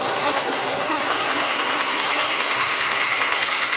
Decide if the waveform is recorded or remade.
remade